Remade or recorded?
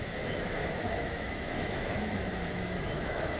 remade